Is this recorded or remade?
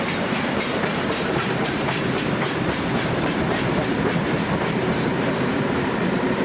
remade